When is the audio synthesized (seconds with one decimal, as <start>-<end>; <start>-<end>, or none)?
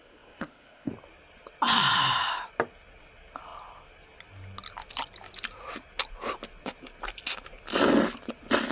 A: 0.0-0.9